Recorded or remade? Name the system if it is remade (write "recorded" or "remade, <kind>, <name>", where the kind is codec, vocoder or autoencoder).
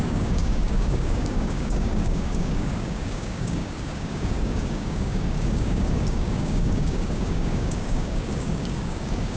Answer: remade, codec, DAC